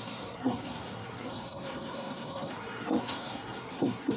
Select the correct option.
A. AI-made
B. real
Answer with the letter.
A